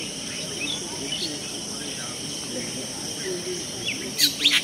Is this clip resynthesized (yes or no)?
yes